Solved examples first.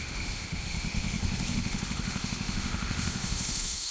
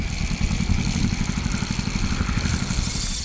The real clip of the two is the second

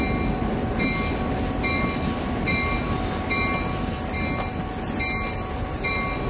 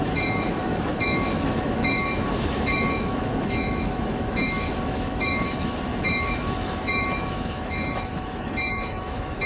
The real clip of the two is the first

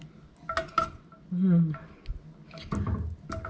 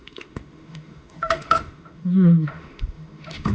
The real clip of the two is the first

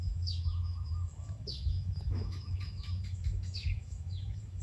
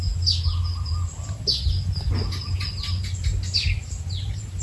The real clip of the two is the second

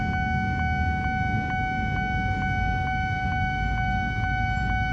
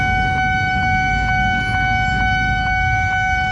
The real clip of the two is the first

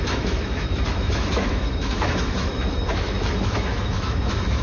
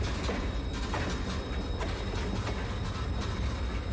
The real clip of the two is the second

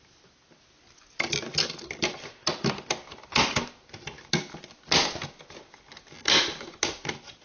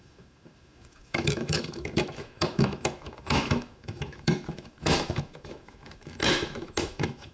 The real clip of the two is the first